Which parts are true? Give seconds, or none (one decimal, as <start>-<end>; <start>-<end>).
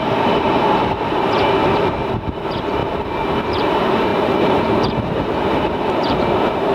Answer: 2.8-3.5